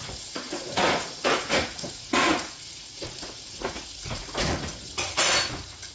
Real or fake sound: fake